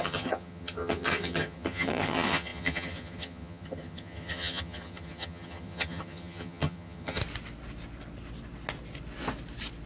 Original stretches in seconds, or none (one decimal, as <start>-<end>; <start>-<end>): 7.2-9.9